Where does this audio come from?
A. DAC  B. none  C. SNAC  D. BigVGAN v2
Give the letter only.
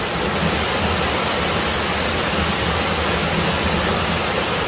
B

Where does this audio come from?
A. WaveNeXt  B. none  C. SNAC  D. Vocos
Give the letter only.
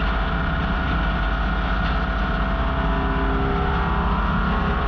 B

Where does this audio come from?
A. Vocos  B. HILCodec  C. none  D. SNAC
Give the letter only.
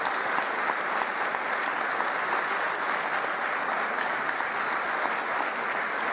C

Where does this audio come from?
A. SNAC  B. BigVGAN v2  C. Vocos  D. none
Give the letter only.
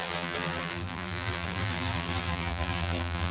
B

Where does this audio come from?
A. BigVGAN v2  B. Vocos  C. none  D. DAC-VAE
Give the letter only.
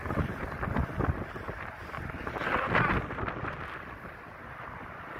C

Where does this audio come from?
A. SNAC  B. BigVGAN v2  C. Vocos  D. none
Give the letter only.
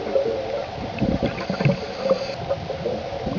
D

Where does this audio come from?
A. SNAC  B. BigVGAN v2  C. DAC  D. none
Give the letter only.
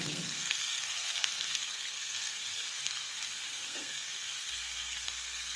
A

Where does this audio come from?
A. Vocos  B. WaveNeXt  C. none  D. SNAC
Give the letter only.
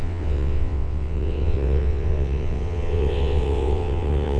B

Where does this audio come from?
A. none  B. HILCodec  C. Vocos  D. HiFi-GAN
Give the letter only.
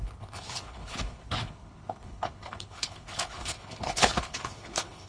B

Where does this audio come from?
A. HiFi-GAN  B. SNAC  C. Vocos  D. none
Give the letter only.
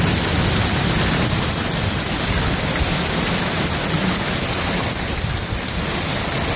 D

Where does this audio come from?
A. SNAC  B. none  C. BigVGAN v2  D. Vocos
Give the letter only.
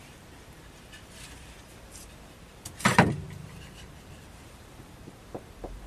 C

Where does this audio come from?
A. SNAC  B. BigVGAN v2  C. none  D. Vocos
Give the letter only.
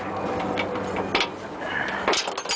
C